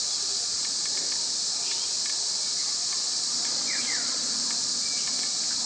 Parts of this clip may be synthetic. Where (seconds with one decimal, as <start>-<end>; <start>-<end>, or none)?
3.0-4.2